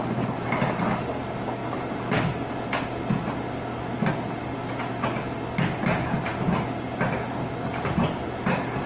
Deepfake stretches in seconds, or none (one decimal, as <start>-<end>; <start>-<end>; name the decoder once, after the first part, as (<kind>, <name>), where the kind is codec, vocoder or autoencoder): none